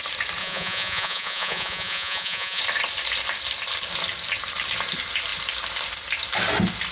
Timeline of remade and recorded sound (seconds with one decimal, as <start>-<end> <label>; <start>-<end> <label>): 0.0-0.4 recorded; 0.4-2.6 remade; 2.6-6.9 recorded